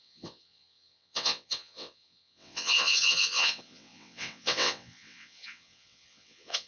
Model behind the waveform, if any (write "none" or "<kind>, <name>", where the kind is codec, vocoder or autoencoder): vocoder, WaveNeXt